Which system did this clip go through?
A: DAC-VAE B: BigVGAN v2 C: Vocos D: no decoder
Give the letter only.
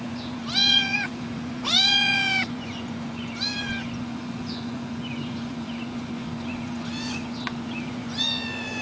C